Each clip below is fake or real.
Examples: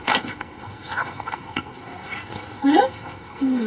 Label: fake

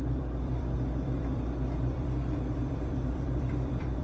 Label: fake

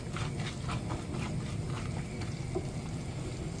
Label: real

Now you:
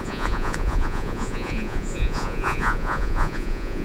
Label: fake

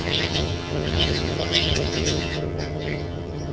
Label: fake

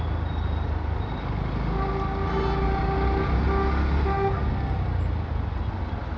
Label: real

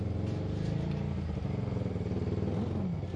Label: real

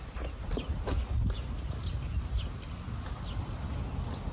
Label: real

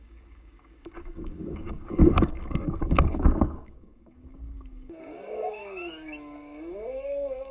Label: fake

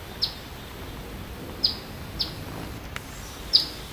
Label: real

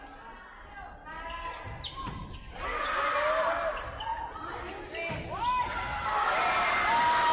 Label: real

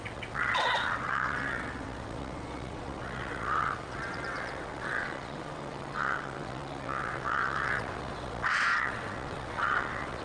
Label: fake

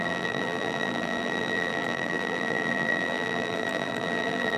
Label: fake